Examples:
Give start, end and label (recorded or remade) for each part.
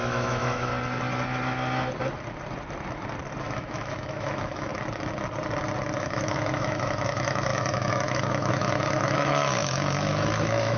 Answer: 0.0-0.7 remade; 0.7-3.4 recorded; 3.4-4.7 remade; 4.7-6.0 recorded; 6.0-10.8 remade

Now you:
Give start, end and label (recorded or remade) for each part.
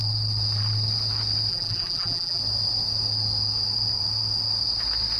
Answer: 0.0-1.5 recorded; 1.5-2.4 remade; 2.4-5.2 recorded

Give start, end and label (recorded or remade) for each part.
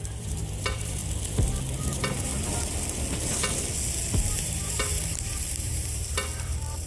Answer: 0.0-1.0 remade; 1.0-1.8 recorded; 1.8-2.3 remade; 2.3-4.4 recorded; 4.4-6.9 remade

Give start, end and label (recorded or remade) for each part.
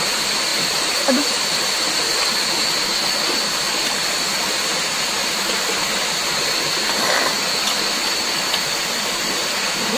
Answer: 0.0-0.5 recorded; 0.5-1.4 remade; 1.4-4.7 recorded; 4.7-5.4 remade; 5.4-10.0 recorded